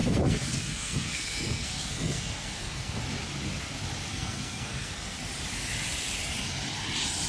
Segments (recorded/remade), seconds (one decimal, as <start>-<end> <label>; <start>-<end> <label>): 0.0-3.0 remade; 3.0-4.1 recorded; 4.1-5.2 remade; 5.2-7.3 recorded